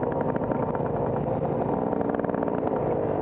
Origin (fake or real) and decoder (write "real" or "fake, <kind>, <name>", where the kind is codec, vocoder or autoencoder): real